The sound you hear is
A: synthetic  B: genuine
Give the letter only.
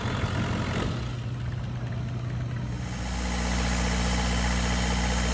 B